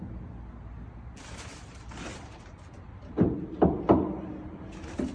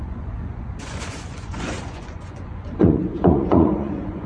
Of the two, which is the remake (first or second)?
second